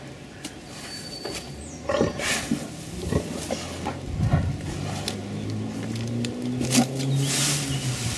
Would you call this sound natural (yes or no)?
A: yes